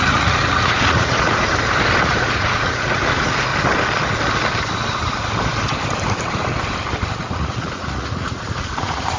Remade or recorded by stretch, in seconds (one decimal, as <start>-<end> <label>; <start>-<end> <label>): 0.0-1.5 remade; 1.5-2.0 recorded; 2.0-3.5 remade; 3.5-7.2 recorded; 7.2-9.2 remade